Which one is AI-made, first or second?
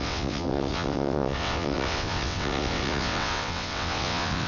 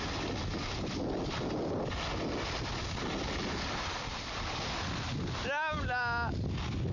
first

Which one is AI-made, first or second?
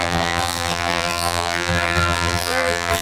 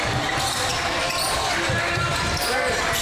first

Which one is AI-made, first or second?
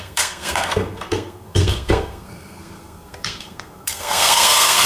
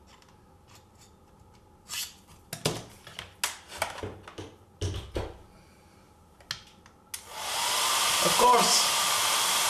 first